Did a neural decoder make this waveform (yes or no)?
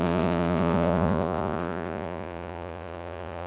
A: yes